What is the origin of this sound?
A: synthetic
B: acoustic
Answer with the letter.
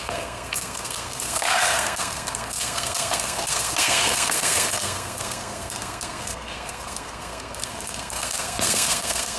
A